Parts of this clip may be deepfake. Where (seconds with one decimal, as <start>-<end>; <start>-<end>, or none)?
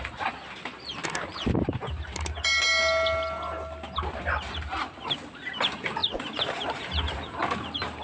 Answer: none